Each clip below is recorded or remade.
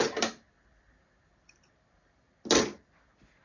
recorded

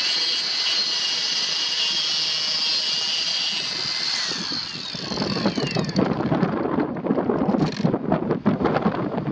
recorded